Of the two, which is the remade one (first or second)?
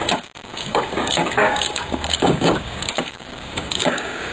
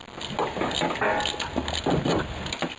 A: first